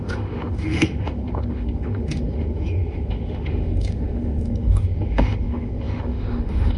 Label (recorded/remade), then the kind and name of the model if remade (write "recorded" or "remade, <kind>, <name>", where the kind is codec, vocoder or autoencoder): remade, autoencoder, DAC-VAE